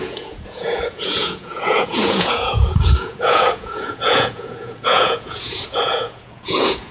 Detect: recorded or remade remade